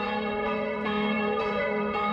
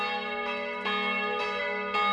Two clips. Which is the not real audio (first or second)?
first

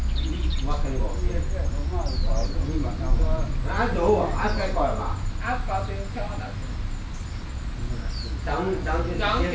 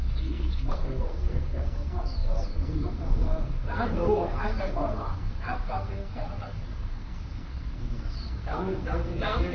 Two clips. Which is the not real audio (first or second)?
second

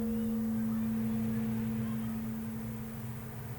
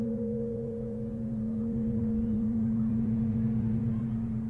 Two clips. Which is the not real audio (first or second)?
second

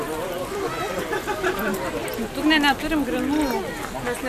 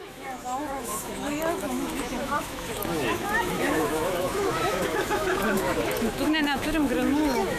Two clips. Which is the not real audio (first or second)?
second